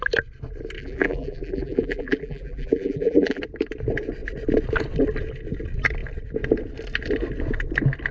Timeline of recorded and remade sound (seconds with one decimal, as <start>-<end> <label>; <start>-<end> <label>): 0.0-0.8 recorded; 0.8-3.4 remade; 3.4-8.1 recorded